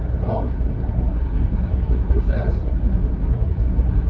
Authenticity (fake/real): fake